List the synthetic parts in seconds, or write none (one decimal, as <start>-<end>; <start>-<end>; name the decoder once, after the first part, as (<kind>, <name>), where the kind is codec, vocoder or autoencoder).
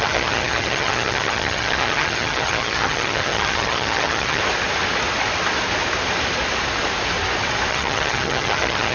0.0-4.4 (vocoder, HiFi-GAN); 7.7-8.9